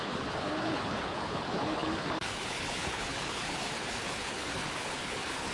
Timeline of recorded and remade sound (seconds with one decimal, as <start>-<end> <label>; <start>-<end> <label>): 0.0-5.5 remade